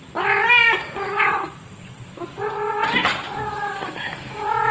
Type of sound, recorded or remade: recorded